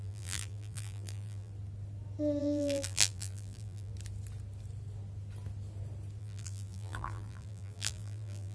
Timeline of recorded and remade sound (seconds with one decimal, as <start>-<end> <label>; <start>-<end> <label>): 0.0-1.5 remade; 1.5-2.4 recorded; 2.4-3.9 remade; 3.9-6.2 recorded; 6.2-8.5 remade